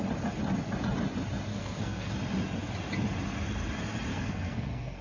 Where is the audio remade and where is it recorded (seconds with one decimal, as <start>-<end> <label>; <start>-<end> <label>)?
0.0-1.5 recorded; 1.5-2.1 remade; 2.1-4.1 recorded; 4.1-5.0 remade